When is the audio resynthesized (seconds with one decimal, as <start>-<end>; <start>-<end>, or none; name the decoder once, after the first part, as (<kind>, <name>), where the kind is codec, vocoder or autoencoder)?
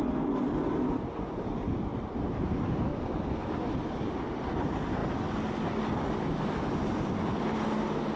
none